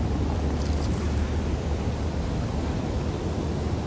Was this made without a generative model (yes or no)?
yes